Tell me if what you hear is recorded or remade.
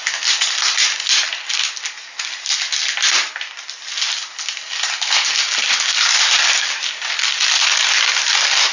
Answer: recorded